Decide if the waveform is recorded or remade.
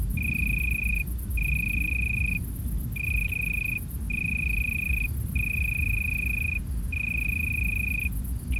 recorded